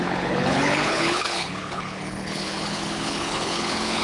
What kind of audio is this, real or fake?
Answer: fake